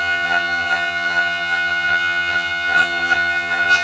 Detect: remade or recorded remade